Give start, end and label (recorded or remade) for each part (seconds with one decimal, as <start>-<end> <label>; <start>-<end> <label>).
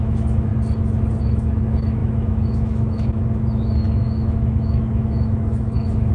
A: 0.0-0.5 remade; 0.5-1.2 recorded; 1.2-6.1 remade